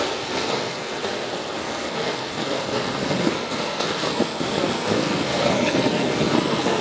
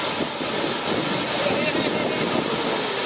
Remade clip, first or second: first